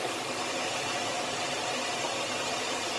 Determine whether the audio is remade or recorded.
recorded